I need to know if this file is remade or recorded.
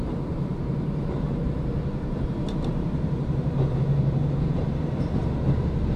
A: remade